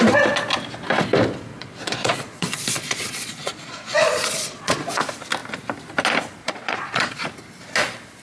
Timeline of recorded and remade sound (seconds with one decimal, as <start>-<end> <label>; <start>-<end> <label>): 0.0-1.5 recorded; 1.5-5.0 remade; 5.0-6.4 recorded; 6.4-7.1 remade; 7.1-8.2 recorded